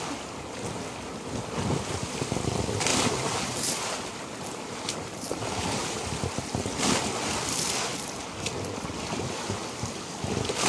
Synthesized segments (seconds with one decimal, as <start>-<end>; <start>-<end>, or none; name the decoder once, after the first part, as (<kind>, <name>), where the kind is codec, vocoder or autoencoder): 2.9-6.0 (vocoder, BigVGAN v2)